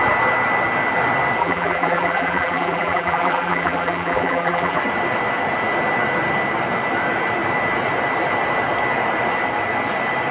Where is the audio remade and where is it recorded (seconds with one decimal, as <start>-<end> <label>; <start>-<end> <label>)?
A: 0.0-1.4 recorded; 1.4-4.8 remade; 4.8-10.3 recorded

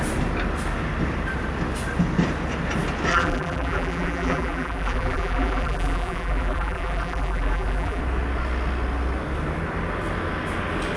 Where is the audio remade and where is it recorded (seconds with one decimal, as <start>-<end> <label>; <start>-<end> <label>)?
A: 0.0-3.1 recorded; 3.1-8.0 remade; 8.0-11.0 recorded

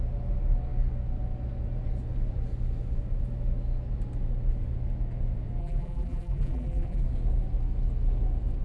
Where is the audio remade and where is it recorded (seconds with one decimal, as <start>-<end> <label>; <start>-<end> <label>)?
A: 0.0-5.6 recorded; 5.6-7.0 remade; 7.0-8.6 recorded

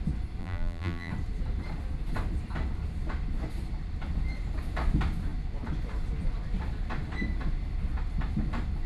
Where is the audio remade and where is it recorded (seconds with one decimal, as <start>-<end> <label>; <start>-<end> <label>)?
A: 0.0-0.4 recorded; 0.4-1.1 remade; 1.1-8.9 recorded